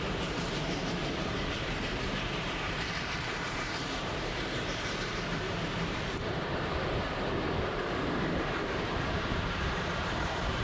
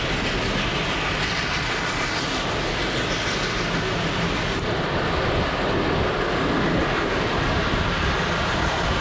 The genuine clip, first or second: second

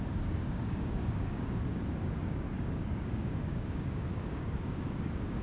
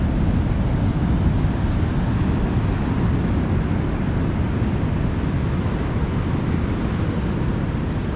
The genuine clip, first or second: second